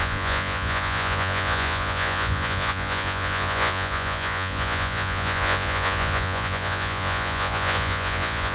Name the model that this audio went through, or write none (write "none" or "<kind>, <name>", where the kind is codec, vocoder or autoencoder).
vocoder, Vocos